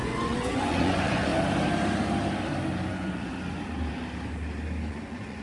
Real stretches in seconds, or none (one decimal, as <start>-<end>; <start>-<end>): 1.3-2.9; 3.3-4.9

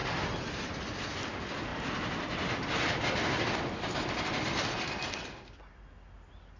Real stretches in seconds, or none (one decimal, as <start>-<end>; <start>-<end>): 0.0-6.6